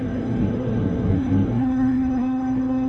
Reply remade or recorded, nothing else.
remade